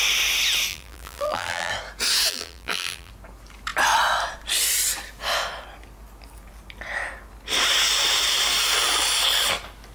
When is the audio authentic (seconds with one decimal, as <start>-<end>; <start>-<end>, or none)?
0.0-0.7; 1.7-2.3; 3.1-9.9